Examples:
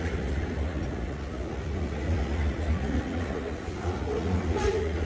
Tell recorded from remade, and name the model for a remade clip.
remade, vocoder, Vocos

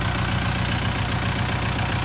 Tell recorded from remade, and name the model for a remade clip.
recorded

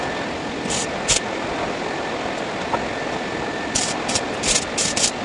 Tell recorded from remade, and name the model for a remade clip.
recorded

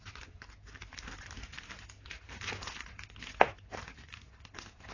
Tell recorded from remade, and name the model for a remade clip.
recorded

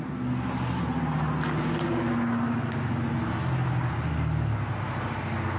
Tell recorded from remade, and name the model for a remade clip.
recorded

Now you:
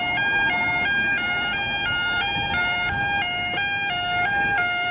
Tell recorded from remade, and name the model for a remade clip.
recorded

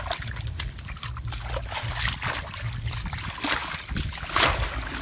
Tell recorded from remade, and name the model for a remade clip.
recorded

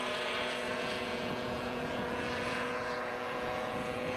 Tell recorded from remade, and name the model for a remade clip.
remade, vocoder, Vocos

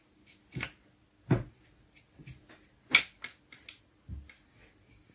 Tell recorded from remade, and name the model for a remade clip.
recorded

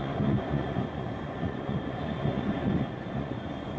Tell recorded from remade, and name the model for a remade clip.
remade, vocoder, Vocos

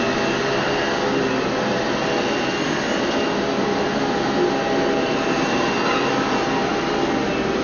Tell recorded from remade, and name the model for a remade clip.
recorded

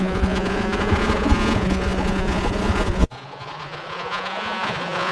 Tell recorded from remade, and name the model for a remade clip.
remade, vocoder, Vocos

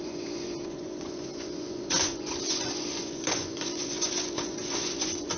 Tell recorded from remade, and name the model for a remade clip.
remade, vocoder, Vocos